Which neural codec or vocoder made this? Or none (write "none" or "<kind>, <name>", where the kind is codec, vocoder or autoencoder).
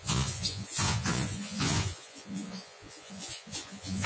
vocoder, Vocos